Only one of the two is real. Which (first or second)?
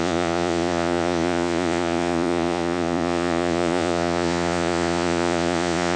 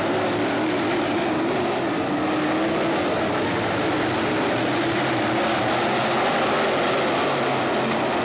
second